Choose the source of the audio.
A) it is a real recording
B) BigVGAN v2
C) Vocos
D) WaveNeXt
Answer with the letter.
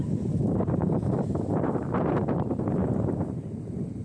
B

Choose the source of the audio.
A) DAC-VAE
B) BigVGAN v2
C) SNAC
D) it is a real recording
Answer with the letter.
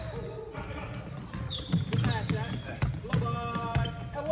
D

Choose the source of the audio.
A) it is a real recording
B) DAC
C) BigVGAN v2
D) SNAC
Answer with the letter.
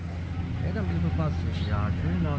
A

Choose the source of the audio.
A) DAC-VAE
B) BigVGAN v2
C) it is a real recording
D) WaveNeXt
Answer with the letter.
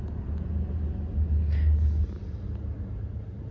C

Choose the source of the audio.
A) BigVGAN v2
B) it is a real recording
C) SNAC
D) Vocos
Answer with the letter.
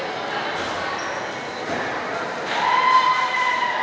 B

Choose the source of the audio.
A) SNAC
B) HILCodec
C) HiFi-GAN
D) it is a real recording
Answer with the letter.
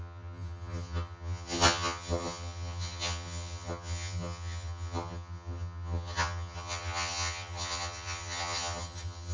C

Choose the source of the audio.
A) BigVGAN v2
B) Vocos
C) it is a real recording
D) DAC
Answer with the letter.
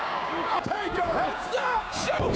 D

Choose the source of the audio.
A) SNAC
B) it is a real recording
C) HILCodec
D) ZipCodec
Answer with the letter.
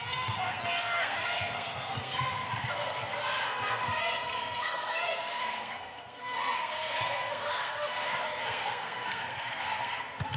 A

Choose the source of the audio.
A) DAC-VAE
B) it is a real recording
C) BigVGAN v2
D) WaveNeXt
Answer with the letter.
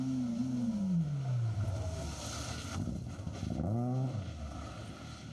B